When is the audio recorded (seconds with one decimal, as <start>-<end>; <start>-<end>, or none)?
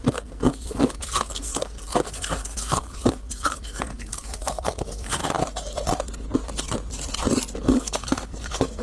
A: 5.2-7.6